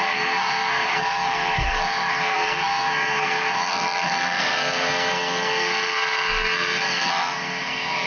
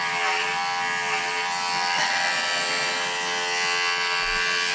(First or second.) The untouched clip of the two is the second